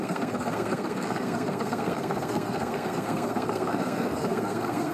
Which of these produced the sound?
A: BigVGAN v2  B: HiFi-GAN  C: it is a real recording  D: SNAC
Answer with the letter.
D